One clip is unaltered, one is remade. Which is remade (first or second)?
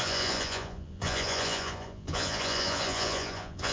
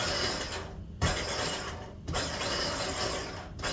first